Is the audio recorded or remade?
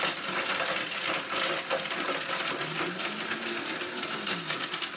recorded